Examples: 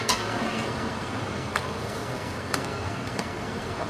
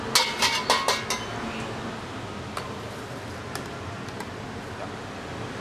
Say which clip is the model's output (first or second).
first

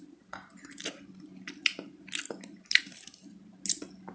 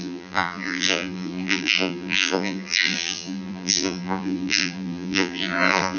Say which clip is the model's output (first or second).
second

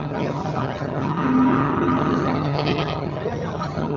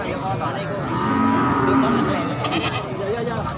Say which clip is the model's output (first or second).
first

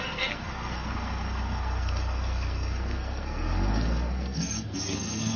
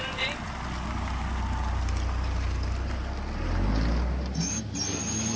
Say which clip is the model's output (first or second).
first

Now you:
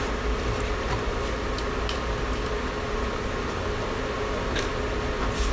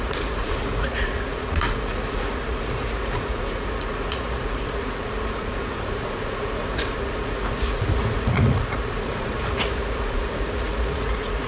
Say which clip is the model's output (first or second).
second